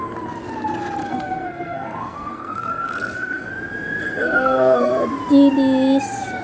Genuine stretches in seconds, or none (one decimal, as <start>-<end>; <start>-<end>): 0.0-1.0; 3.5-4.0; 4.9-6.4